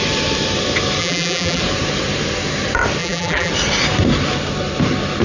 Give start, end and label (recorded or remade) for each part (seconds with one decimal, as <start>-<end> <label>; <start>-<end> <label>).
0.0-1.0 recorded; 1.0-1.6 remade; 1.6-3.0 recorded; 3.0-3.5 remade; 3.5-5.2 recorded